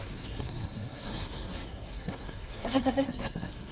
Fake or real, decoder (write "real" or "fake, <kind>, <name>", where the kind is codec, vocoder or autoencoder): fake, codec, SNAC